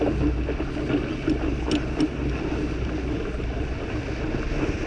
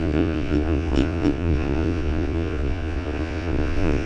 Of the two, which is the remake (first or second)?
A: second